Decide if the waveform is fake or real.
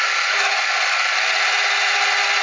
real